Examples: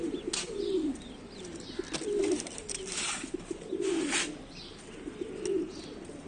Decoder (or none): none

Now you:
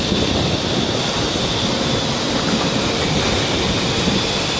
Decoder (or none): none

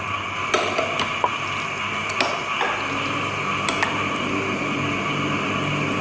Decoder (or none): none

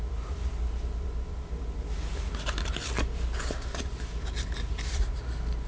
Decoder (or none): none